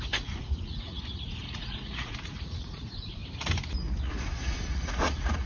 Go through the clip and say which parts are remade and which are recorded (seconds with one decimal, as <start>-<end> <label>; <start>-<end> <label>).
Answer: 0.0-3.2 remade; 3.2-4.0 recorded; 4.0-5.5 remade